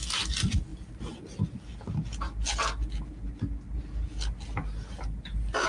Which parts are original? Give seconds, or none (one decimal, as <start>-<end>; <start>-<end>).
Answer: 0.0-5.7